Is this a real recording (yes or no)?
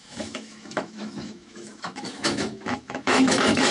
no